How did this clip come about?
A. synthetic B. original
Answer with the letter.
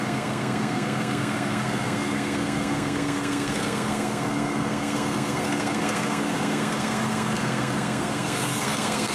A